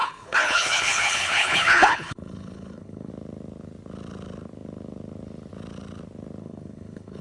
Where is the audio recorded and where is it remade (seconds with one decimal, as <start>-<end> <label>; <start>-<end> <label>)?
0.0-3.1 remade; 3.1-6.4 recorded; 6.4-7.2 remade